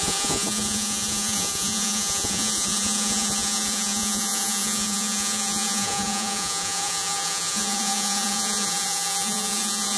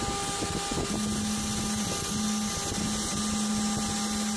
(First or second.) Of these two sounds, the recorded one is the second